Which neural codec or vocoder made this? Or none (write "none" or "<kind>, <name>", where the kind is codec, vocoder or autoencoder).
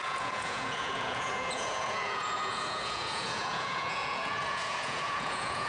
vocoder, Vocos